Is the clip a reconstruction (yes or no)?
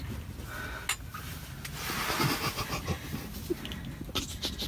no